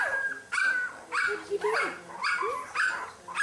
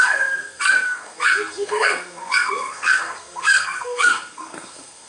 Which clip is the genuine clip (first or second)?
first